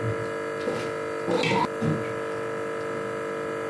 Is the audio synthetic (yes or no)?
no